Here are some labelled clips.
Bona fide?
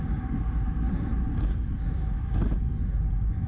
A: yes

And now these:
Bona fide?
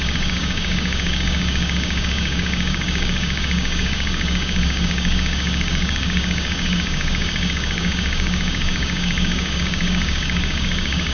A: no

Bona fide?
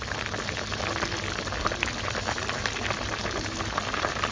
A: yes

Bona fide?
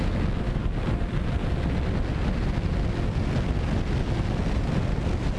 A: yes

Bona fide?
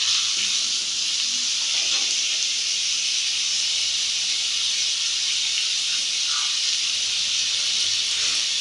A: yes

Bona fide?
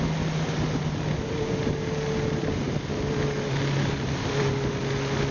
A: yes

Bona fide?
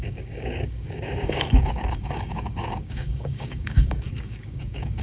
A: no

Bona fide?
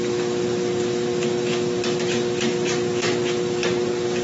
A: yes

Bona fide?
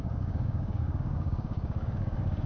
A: no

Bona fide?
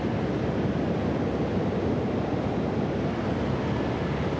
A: yes